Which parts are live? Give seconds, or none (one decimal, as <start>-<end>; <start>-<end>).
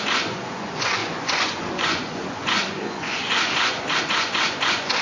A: none